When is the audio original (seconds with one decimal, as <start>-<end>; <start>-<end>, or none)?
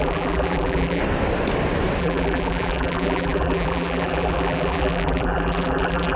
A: 1.0-2.0